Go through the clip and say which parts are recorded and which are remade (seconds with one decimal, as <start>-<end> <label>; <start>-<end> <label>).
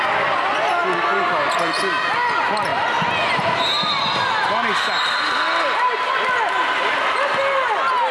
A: 0.0-8.1 recorded